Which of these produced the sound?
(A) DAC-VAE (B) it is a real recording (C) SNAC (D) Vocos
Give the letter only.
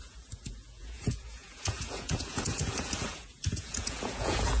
D